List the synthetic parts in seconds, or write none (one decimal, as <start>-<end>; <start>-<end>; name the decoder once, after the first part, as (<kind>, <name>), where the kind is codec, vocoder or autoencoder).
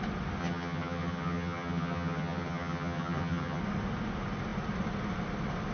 0.4-3.6 (vocoder, HiFi-GAN)